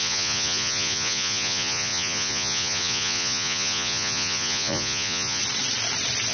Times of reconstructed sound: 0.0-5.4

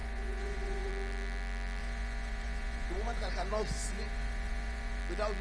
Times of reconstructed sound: 0.0-0.9; 1.8-5.0

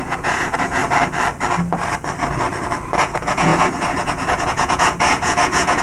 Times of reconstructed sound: 0.0-0.8; 3.0-5.8

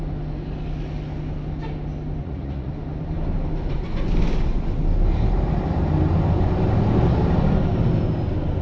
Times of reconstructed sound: 2.2-2.7

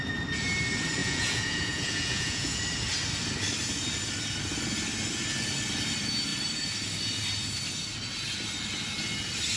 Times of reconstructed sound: 1.0-2.6

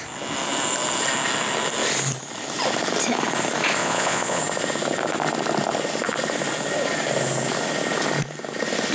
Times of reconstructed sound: 3.8-4.4